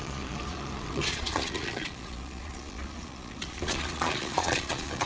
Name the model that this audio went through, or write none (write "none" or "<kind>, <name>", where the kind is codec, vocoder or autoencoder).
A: vocoder, Vocos